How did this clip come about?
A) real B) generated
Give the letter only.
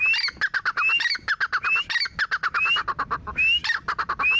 A